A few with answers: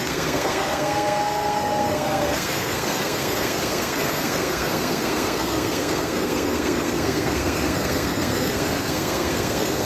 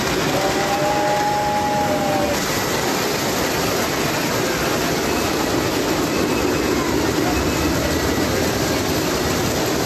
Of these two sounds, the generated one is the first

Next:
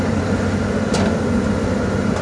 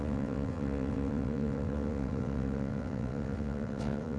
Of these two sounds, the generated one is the second